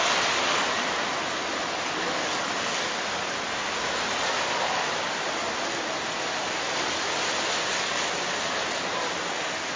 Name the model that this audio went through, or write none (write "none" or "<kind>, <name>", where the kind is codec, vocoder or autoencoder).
none